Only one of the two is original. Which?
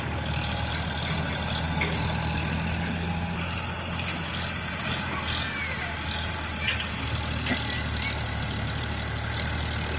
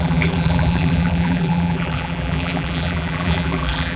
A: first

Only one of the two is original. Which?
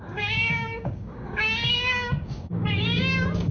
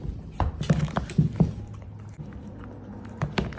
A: second